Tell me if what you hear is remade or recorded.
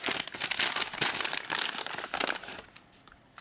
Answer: recorded